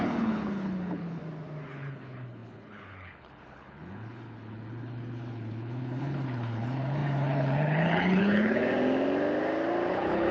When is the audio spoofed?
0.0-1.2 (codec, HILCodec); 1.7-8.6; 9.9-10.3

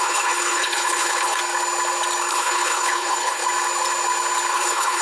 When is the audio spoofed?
0.0-1.4 (codec, HILCodec); 2.3-3.4; 4.5-5.0

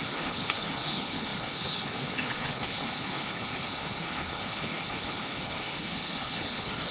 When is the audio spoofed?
0.0-6.9 (codec, HILCodec)